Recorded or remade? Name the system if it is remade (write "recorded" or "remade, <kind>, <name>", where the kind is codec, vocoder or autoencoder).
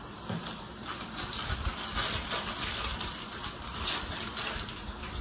recorded